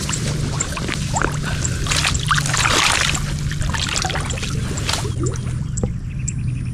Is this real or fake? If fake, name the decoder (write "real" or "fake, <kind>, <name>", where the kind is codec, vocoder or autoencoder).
real